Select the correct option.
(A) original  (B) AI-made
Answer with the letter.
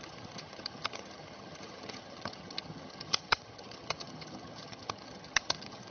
B